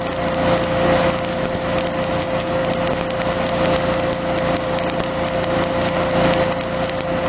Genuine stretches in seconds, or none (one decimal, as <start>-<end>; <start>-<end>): 0.0-7.3